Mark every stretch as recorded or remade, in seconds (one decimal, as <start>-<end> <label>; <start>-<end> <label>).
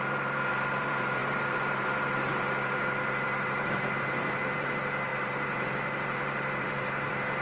0.0-7.4 remade